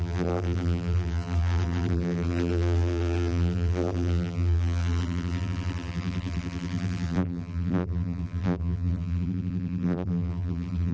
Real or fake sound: fake